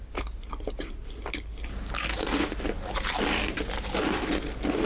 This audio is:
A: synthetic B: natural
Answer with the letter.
B